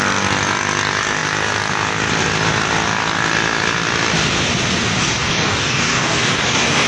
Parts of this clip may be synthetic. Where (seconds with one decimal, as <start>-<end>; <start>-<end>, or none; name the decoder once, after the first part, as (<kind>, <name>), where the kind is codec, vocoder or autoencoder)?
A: 5.0-6.9 (codec, DAC)